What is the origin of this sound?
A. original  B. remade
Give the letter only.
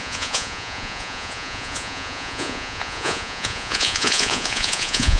B